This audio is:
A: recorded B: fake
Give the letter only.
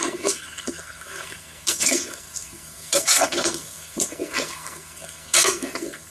B